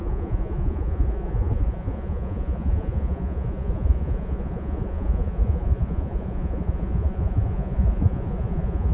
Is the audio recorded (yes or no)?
no